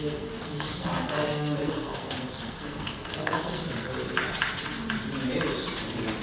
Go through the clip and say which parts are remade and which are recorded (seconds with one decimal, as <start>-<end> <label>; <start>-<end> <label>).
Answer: 0.0-3.9 remade; 3.9-6.2 recorded